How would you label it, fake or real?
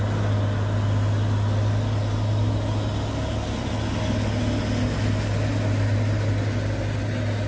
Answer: real